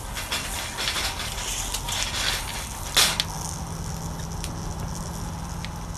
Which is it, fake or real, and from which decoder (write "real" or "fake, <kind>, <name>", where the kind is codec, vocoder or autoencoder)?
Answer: real